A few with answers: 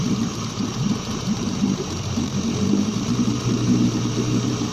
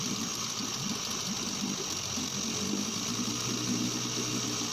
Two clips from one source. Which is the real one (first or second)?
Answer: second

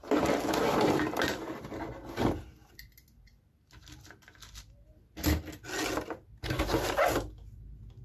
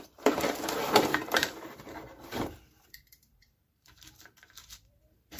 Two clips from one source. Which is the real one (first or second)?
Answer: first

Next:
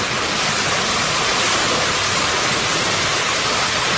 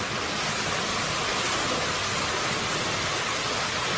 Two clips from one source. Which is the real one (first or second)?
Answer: second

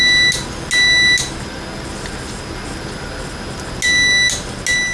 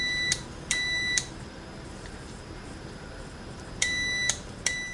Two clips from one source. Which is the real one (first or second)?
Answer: first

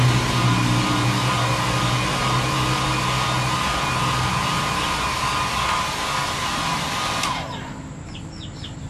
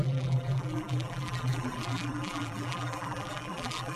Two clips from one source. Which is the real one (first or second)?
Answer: first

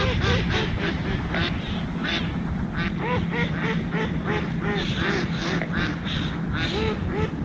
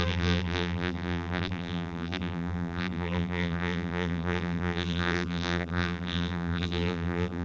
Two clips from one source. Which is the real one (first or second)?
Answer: first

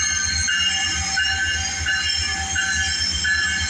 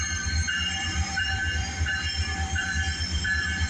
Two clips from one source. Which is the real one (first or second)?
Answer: first